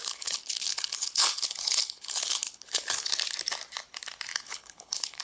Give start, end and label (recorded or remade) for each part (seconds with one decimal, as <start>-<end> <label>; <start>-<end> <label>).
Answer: 0.0-3.1 remade; 3.1-4.3 recorded; 4.3-5.2 remade